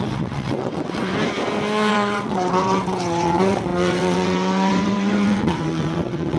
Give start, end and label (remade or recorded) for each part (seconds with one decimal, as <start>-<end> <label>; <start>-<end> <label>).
0.0-1.1 remade; 1.1-1.9 recorded; 1.9-6.4 remade

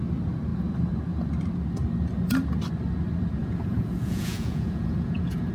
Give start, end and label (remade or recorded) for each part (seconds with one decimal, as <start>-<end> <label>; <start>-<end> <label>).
0.0-3.4 recorded; 3.4-5.5 remade

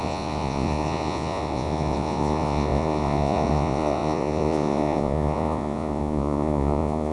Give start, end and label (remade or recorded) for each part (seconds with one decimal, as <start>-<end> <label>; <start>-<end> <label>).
0.0-7.1 remade

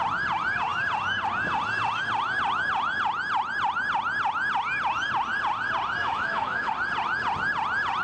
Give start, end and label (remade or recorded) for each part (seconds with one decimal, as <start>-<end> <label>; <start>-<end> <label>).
0.0-6.0 recorded; 6.0-6.7 remade; 6.7-8.0 recorded

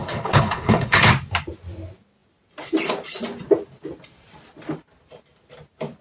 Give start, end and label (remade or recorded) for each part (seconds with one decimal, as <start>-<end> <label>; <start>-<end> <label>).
0.0-1.1 remade; 1.1-6.0 recorded

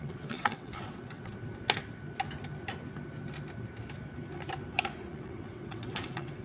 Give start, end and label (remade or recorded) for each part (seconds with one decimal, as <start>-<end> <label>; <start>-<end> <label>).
0.0-1.3 remade; 1.3-5.1 recorded; 5.1-6.4 remade